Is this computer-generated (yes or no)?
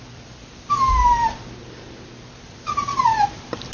no